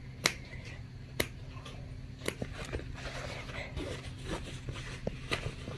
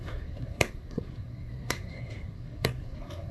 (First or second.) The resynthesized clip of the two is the second